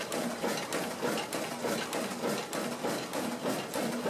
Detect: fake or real real